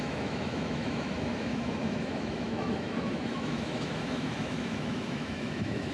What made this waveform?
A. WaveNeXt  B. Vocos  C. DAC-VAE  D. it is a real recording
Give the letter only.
C